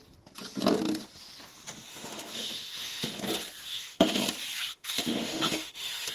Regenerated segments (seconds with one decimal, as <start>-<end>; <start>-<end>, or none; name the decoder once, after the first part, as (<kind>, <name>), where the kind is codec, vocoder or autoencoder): 1.9-3.2 (autoencoder, DAC-VAE); 3.7-4.2; 4.7-6.1